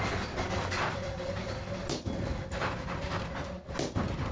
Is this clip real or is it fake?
real